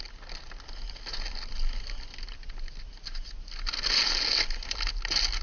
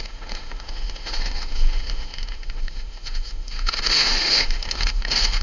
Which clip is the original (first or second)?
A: first